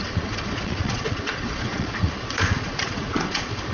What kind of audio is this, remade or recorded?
remade